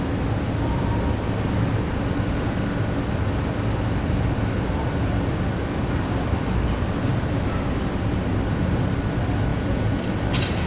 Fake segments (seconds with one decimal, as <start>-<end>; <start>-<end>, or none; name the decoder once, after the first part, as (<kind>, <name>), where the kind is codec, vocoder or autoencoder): 9.5-10.0 (vocoder, Vocos)